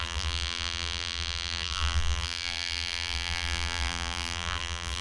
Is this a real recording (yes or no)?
no